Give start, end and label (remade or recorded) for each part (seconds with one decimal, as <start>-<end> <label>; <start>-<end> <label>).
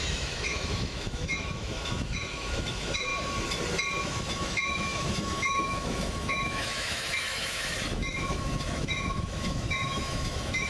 0.0-3.1 remade; 3.1-4.0 recorded; 4.0-10.7 remade